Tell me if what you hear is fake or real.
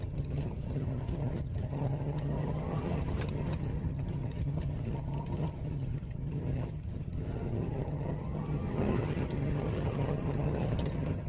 fake